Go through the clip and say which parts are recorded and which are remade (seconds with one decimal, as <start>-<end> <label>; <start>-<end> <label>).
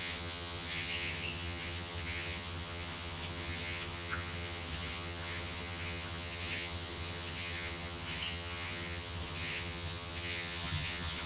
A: 0.0-11.3 remade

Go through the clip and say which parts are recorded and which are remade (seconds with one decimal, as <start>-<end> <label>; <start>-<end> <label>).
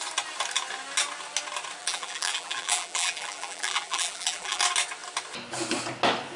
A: 0.0-1.8 recorded; 1.8-4.6 remade; 4.6-6.4 recorded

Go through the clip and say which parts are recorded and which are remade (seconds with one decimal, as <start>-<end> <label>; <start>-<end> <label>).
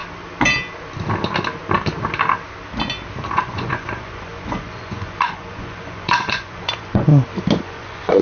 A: 0.0-3.3 recorded; 3.3-7.1 remade; 7.1-7.6 recorded; 7.6-8.2 remade